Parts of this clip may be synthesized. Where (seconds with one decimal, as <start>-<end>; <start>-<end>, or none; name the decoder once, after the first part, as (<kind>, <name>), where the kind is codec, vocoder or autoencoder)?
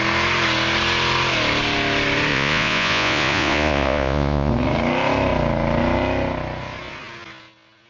2.3-4.5 (vocoder, Vocos)